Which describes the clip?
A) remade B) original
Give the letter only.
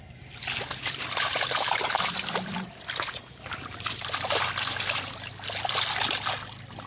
B